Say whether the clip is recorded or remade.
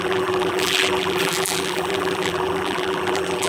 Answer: remade